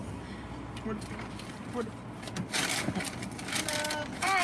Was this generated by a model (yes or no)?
no